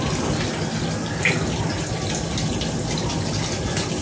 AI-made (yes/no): no